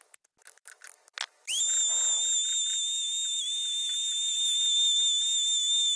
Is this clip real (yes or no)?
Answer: yes